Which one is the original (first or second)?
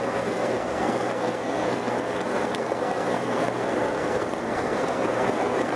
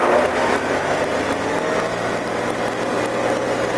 second